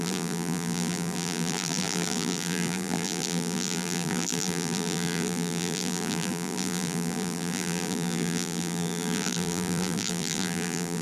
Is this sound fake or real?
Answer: fake